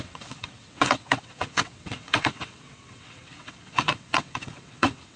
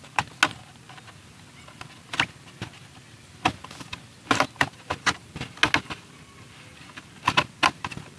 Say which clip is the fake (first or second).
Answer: first